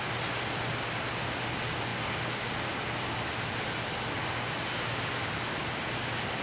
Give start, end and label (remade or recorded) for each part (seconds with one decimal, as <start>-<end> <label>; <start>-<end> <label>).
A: 0.0-6.4 recorded